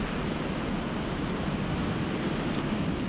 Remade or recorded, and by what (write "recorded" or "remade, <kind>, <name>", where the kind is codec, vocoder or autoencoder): recorded